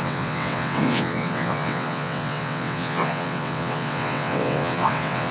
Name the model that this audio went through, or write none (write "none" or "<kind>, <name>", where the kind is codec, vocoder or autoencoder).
vocoder, WaveNeXt